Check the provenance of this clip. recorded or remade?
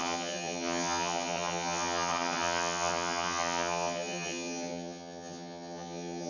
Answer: remade